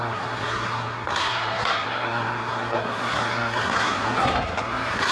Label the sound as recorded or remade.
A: remade